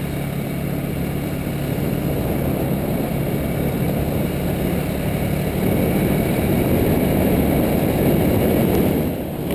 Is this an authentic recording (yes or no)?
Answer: yes